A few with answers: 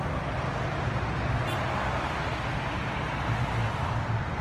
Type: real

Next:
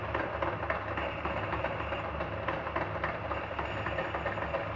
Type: real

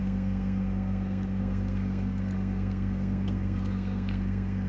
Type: fake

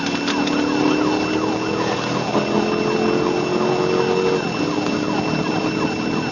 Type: real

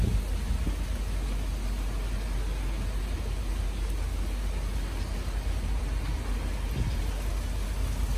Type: real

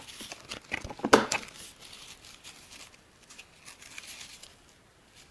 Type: real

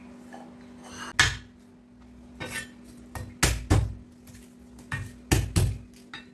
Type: real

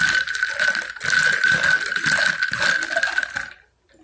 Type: real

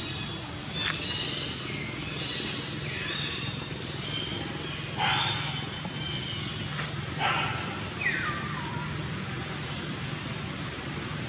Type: real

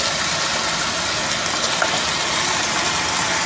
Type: real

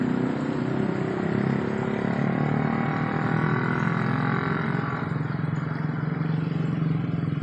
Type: real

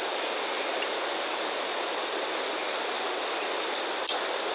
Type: real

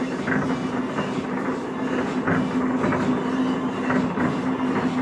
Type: real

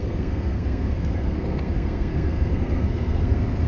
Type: fake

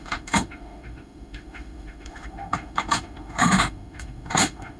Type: fake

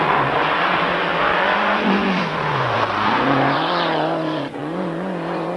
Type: fake